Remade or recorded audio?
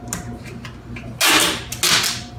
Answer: recorded